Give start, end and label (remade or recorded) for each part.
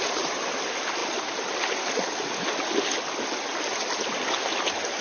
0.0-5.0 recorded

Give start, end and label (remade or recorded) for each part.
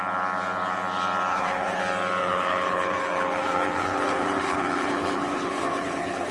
0.0-1.3 recorded; 1.3-1.8 remade; 1.8-2.2 recorded; 2.2-6.3 remade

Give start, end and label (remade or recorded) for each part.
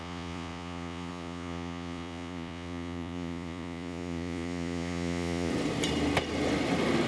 0.0-5.5 remade; 5.5-7.1 recorded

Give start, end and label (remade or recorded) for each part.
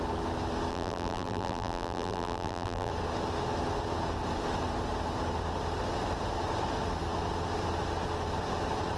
0.0-0.7 recorded; 0.7-2.9 remade; 2.9-9.0 recorded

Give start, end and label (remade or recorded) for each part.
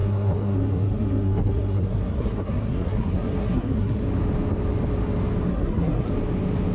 0.0-4.0 remade; 4.0-5.5 recorded; 5.5-6.1 remade; 6.1-6.7 recorded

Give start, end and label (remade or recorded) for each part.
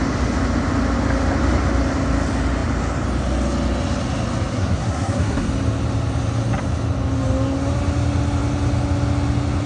0.0-4.5 recorded; 4.5-5.5 remade; 5.5-9.7 recorded